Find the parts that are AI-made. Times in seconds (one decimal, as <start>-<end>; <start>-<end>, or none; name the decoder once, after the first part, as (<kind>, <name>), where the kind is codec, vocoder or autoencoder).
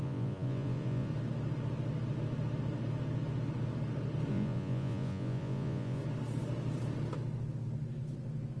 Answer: 0.0-1.1 (vocoder, Vocos); 4.3-6.0